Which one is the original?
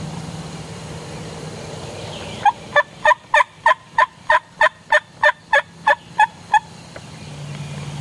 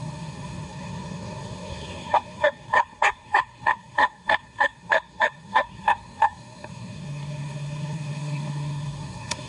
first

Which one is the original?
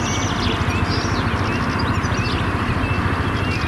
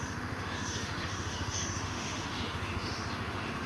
first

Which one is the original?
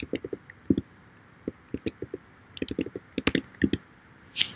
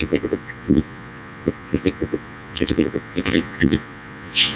first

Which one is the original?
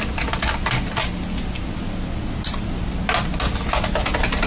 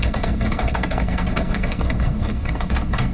first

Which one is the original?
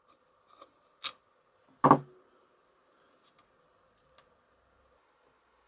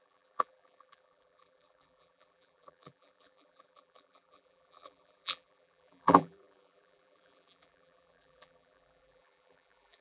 first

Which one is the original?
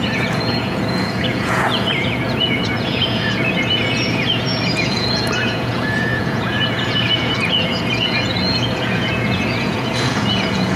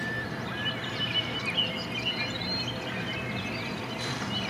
second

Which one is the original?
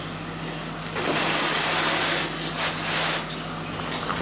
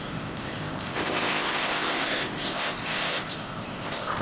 first